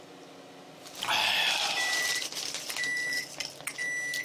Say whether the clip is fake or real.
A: real